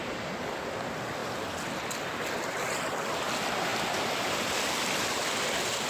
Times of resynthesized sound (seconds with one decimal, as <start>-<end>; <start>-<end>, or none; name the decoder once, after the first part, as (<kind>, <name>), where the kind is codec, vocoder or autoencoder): none